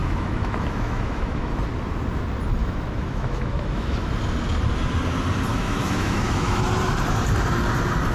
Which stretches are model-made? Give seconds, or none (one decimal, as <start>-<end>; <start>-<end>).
0.0-1.6; 2.6-4.1; 5.5-6.6